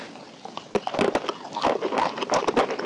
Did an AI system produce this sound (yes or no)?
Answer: no